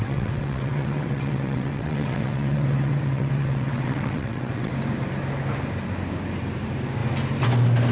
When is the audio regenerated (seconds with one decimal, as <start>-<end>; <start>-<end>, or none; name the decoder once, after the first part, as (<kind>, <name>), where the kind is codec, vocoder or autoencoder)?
0.0-4.7 (vocoder, WaveNeXt)